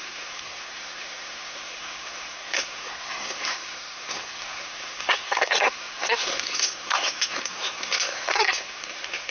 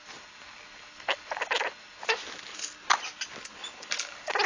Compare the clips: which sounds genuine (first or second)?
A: second